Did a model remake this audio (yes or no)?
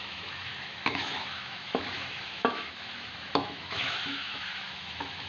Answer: yes